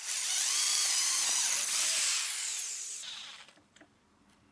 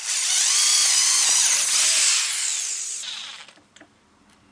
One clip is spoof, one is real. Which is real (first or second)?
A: second